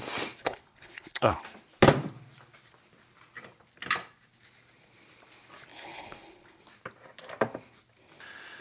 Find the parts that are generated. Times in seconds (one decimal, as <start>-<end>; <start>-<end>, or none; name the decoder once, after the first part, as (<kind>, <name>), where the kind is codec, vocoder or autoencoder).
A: 0.4-1.4 (codec, HILCodec); 5.7-6.6